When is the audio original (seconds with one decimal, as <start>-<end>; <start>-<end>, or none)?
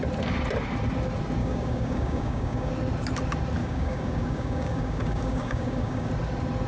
0.0-1.4; 2.7-3.6; 6.1-6.7